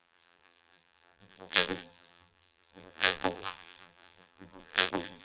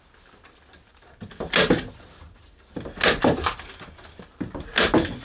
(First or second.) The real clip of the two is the second